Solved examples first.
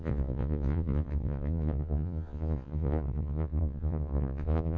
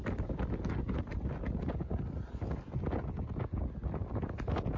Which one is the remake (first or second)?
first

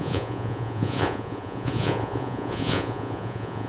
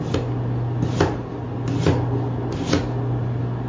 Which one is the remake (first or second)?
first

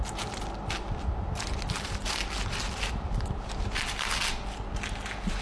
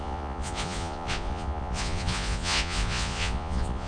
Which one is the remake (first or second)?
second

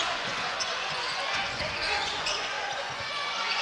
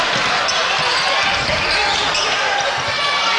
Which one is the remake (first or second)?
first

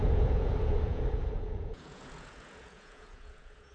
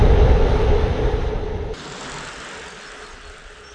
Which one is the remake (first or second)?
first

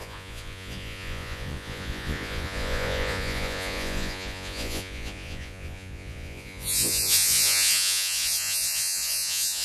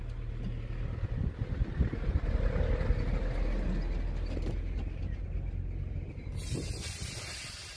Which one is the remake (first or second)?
first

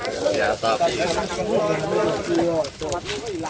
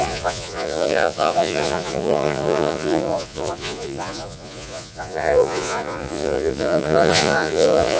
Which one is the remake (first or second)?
second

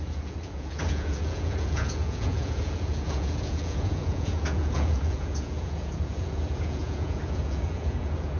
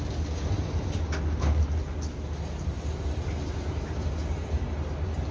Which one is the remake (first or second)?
first